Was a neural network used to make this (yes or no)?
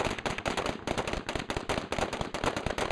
no